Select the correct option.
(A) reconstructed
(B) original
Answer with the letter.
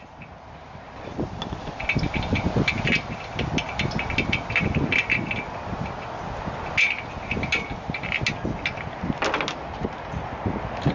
B